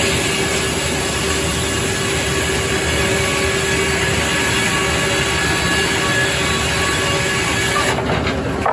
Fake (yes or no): no